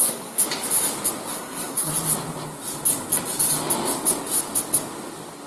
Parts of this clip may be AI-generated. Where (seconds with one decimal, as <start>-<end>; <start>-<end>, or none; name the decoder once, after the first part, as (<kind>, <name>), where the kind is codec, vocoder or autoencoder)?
0.0-0.4 (codec, SNAC); 1.3-1.9